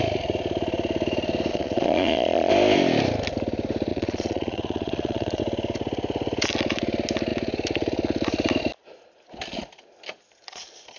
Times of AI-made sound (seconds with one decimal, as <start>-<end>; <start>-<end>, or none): 1.5-2.5; 3.9-5.4

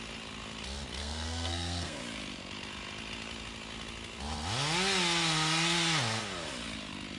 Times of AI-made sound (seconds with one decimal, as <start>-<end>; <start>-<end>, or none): 1.0-2.0

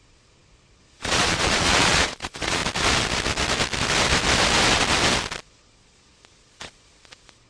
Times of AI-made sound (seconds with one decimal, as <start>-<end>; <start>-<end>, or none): 0.0-2.6; 5.4-7.5

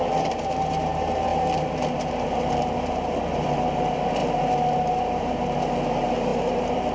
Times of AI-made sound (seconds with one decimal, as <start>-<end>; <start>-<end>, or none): 0.0-6.9